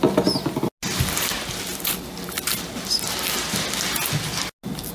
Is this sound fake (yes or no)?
no